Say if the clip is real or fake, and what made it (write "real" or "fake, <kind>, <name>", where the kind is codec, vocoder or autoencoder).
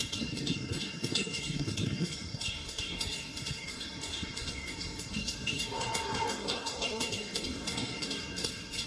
fake, codec, SNAC